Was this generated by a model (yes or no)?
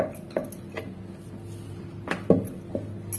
no